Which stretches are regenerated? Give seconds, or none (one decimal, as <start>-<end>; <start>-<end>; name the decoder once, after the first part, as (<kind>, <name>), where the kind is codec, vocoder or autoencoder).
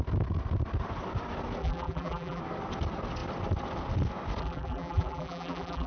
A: 1.6-2.4 (vocoder, BigVGAN v2); 4.4-5.9